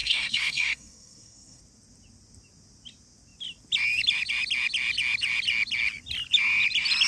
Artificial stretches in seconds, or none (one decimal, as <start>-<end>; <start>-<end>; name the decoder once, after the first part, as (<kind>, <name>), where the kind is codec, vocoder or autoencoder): 0.0-1.6 (codec, SNAC)